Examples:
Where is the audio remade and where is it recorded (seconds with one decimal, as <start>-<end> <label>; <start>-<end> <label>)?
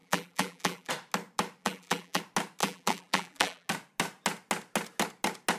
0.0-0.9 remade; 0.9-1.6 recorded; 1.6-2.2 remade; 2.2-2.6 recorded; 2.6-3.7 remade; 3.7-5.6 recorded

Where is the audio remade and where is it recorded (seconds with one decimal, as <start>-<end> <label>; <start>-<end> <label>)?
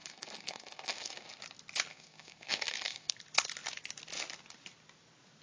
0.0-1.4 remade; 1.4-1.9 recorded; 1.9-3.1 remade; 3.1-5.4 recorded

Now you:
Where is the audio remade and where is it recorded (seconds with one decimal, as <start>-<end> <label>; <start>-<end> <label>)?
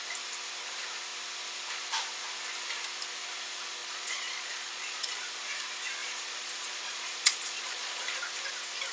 0.0-3.8 recorded; 3.8-5.2 remade; 5.2-6.0 recorded; 6.0-8.2 remade; 8.2-8.9 recorded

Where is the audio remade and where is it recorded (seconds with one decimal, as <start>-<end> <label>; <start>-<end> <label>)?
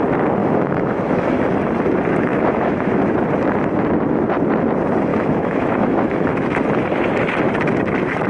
0.0-0.4 recorded; 0.4-1.4 remade; 1.4-2.3 recorded; 2.3-3.1 remade; 3.1-5.1 recorded; 5.1-6.6 remade; 6.6-8.3 recorded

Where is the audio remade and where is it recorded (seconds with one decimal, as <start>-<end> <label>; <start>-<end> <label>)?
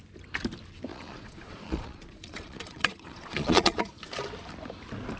0.0-0.9 recorded; 0.9-4.0 remade; 4.0-5.2 recorded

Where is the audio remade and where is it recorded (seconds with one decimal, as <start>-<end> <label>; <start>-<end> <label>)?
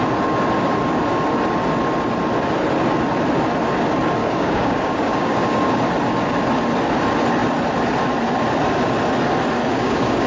0.0-4.2 recorded; 4.2-5.8 remade; 5.8-9.6 recorded; 9.6-10.3 remade